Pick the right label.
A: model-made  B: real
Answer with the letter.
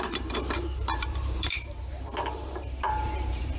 A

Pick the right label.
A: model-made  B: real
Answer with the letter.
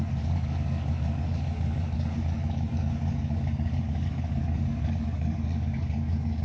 A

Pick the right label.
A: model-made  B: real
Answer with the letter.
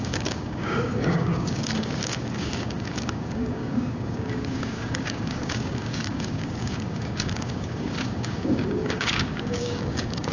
A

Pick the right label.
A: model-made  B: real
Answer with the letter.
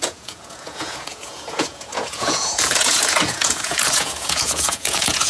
A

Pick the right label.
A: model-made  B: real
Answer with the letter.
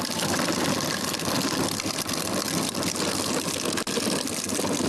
B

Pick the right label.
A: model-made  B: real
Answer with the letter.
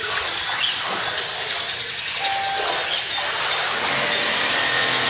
B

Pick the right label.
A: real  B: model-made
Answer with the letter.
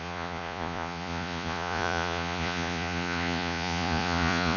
B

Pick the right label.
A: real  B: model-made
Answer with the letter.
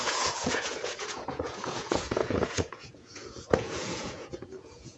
B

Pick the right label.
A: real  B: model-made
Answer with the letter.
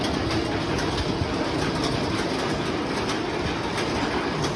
A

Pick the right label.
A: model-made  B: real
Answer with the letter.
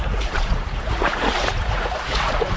A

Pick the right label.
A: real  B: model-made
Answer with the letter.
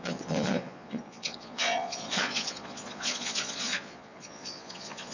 B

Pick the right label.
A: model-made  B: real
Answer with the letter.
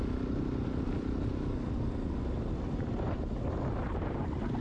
B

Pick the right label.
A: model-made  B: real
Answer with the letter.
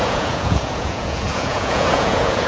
A